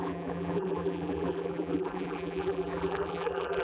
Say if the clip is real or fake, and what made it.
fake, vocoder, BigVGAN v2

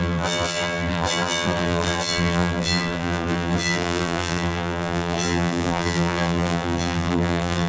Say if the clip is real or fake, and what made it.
fake, vocoder, BigVGAN v2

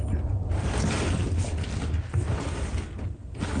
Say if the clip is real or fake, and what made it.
real